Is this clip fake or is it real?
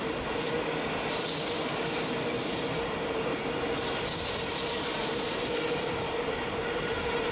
real